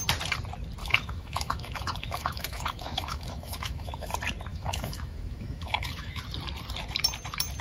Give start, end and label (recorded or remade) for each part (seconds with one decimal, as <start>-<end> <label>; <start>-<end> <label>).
0.0-0.8 recorded; 0.8-4.1 remade; 4.1-4.5 recorded; 4.5-6.2 remade; 6.2-7.6 recorded